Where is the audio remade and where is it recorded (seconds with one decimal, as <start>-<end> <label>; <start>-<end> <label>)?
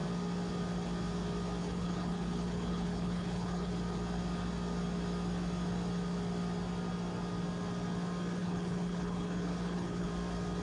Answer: 0.0-1.6 recorded; 1.6-3.7 remade; 3.7-8.4 recorded; 8.4-10.1 remade; 10.1-10.6 recorded